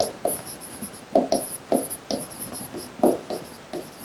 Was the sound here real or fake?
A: real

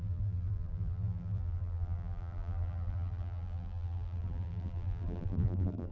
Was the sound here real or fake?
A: fake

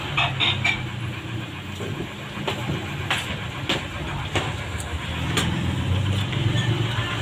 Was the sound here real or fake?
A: real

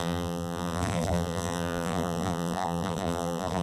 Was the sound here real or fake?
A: fake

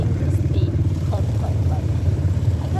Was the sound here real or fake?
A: fake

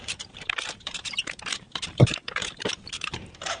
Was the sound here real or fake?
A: fake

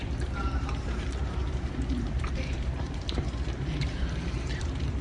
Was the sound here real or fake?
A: fake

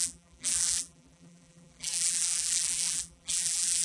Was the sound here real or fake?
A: fake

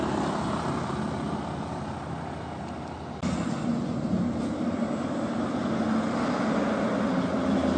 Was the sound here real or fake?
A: real